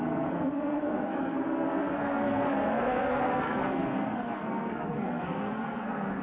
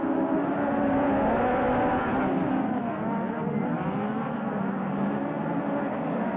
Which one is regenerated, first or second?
first